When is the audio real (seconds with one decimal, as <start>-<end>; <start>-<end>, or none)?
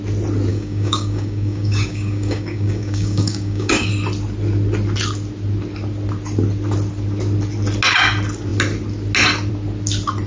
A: 0.0-0.5; 3.9-10.3